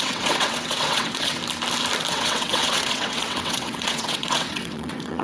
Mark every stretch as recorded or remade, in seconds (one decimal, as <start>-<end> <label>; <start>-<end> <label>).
0.0-1.4 remade; 1.4-2.1 recorded; 2.1-5.2 remade